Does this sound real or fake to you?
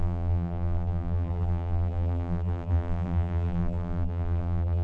fake